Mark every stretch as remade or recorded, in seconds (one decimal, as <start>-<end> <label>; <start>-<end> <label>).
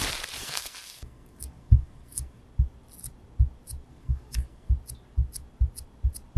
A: 0.0-0.4 recorded; 0.4-2.4 remade; 2.4-3.9 recorded; 3.9-4.7 remade; 4.7-6.4 recorded